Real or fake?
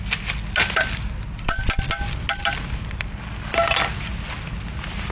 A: real